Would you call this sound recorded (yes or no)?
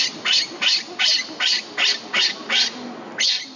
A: yes